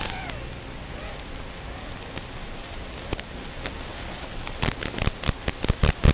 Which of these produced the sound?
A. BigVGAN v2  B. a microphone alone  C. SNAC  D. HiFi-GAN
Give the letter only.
B